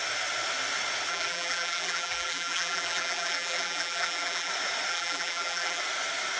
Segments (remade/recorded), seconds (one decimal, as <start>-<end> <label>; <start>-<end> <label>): 0.0-1.1 recorded; 1.1-4.5 remade; 4.5-4.9 recorded; 4.9-5.8 remade; 5.8-6.4 recorded